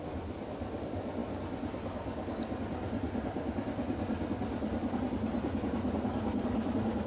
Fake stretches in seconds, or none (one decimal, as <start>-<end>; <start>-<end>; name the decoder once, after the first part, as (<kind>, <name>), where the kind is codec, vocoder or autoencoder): none